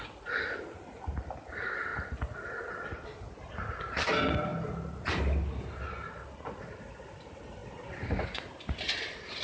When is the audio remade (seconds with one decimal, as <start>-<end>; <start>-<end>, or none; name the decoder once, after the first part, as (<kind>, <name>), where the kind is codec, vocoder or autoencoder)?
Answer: none